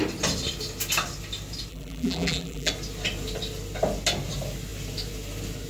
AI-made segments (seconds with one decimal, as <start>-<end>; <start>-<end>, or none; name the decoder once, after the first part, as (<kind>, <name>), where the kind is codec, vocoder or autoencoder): 1.7-2.7 (vocoder, BigVGAN v2)